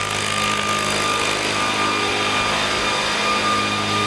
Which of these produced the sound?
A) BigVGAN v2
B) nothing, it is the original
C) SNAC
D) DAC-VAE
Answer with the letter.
B